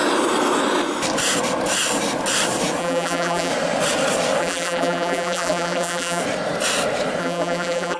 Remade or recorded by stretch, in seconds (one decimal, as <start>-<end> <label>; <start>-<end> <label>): 0.0-2.8 recorded; 2.8-3.5 remade; 3.5-4.4 recorded; 4.4-6.2 remade; 6.2-7.2 recorded; 7.2-8.0 remade